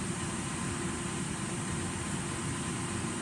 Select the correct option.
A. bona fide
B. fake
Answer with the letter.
A